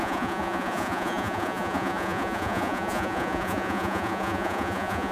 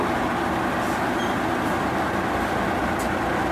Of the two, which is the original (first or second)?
second